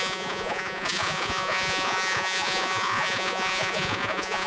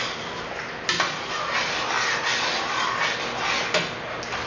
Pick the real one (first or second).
second